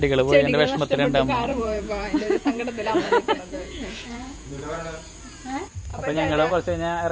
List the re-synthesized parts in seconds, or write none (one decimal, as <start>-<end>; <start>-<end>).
1.5-5.0; 5.9-6.5